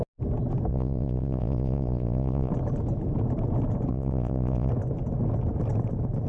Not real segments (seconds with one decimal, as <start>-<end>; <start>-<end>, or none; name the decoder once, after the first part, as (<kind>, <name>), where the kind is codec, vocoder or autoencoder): 0.7-2.5 (vocoder, Vocos); 3.9-4.7